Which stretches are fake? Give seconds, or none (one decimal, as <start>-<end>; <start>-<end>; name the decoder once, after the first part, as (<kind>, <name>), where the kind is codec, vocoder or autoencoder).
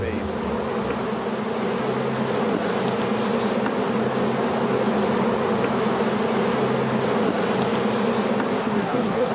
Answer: 8.6-9.3 (codec, SNAC)